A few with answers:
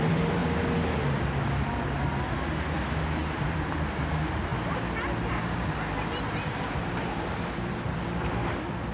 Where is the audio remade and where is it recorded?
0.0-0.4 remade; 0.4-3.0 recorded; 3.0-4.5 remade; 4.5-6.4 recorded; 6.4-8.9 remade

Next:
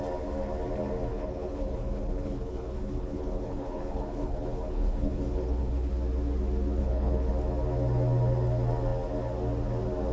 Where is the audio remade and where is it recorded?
0.0-1.1 recorded; 1.1-5.9 remade; 5.9-6.8 recorded; 6.8-7.3 remade; 7.3-10.1 recorded

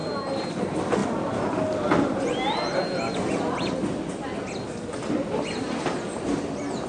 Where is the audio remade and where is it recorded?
0.0-6.9 recorded

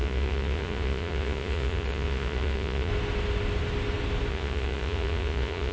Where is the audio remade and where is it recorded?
0.0-2.9 remade; 2.9-4.3 recorded; 4.3-5.7 remade

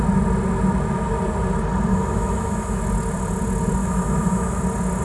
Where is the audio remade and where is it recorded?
0.0-1.9 recorded; 1.9-2.8 remade; 2.8-3.8 recorded; 3.8-4.6 remade; 4.6-5.0 recorded

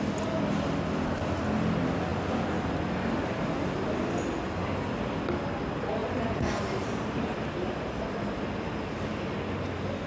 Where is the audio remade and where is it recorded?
0.0-10.1 recorded

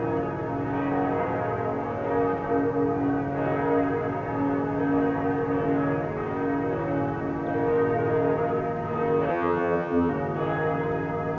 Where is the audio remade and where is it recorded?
0.0-9.3 recorded; 9.3-10.1 remade; 10.1-11.4 recorded

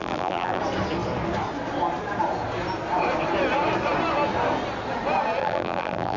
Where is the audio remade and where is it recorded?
0.0-0.6 remade; 0.6-5.4 recorded; 5.4-6.2 remade